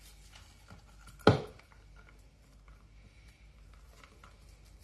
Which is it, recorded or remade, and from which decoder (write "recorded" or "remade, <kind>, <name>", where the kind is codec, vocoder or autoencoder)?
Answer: recorded